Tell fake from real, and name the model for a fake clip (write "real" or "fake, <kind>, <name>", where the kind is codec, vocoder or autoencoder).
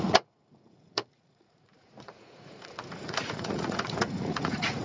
fake, vocoder, Vocos